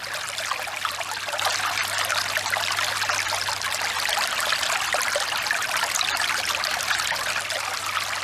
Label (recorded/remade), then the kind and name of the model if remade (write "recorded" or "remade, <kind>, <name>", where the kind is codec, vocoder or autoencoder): recorded